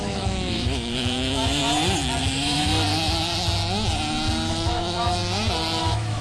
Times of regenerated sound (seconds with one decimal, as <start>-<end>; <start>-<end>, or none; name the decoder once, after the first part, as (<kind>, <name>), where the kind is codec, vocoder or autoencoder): 0.0-1.6 (autoencoder, DAC-VAE); 2.2-2.7; 4.5-5.2; 5.8-6.2